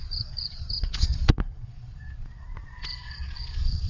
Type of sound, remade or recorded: remade